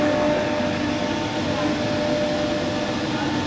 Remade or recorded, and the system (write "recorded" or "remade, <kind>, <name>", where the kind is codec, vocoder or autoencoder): recorded